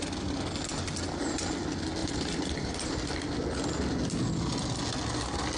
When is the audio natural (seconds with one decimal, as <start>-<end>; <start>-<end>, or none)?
0.0-2.0; 3.0-5.6